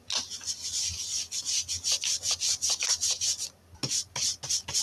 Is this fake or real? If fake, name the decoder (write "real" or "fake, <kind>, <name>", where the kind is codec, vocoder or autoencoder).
real